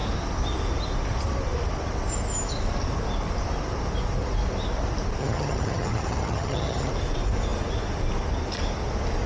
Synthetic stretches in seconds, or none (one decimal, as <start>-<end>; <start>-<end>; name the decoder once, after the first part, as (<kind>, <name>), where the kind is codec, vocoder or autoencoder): 5.2-6.9 (vocoder, HiFi-GAN)